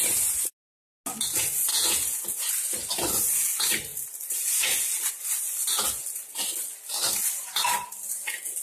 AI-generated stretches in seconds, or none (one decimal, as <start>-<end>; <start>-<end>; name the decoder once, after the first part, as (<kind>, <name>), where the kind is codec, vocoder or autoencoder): 1.7-2.5 (vocoder, Vocos)